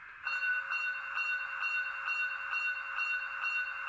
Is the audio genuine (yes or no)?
yes